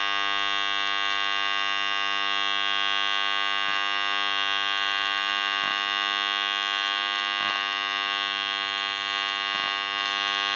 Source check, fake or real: real